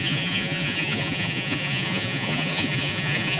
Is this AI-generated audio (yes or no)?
yes